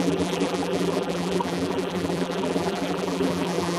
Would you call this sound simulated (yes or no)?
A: yes